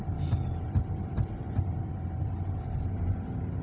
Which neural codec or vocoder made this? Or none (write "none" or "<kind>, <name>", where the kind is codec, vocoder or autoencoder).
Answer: none